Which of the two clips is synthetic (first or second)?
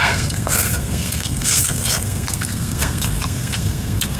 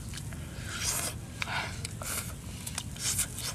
first